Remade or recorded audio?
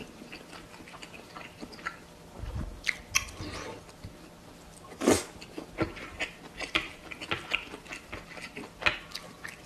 recorded